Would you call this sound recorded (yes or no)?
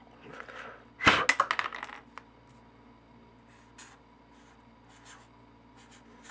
yes